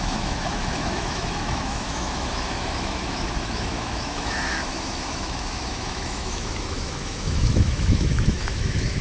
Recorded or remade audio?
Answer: remade